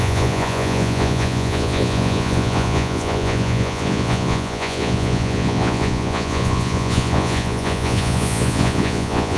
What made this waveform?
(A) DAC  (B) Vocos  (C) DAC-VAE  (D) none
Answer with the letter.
B